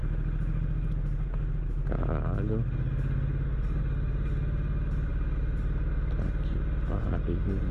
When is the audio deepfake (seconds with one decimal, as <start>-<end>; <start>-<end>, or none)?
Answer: none